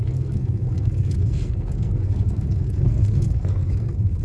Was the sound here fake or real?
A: fake